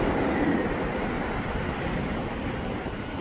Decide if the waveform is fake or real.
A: real